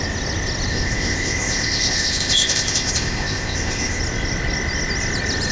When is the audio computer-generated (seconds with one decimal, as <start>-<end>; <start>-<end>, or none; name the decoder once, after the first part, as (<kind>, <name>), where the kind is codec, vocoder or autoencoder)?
0.7-4.0 (codec, ZipCodec)